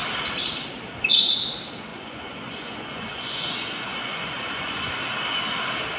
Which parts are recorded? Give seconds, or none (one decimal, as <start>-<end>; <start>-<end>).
0.0-1.9; 5.0-6.0